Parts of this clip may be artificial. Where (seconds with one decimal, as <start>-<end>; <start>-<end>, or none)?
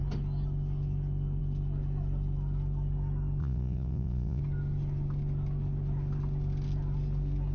3.4-4.4